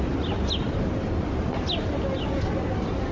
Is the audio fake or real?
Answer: real